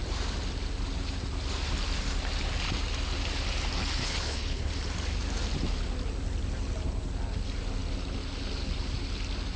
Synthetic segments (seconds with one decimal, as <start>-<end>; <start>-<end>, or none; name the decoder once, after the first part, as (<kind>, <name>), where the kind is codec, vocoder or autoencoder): 4.0-4.7 (codec, HILCodec)